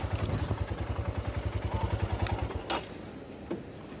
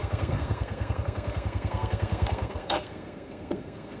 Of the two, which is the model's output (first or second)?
second